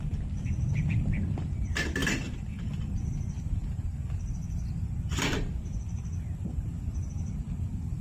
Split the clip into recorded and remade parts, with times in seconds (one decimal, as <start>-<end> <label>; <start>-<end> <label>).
0.0-2.0 recorded; 2.0-4.2 remade; 4.2-8.0 recorded